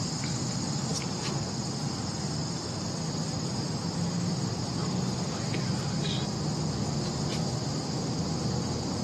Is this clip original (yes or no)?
yes